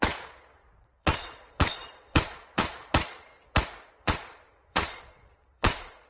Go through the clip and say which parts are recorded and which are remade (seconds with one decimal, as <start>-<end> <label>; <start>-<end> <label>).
0.0-3.3 remade; 3.3-3.9 recorded; 3.9-6.1 remade